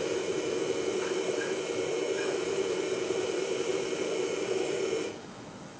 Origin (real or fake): fake